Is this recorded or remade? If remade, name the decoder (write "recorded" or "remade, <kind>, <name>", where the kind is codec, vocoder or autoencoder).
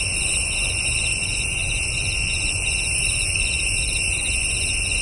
remade, vocoder, Vocos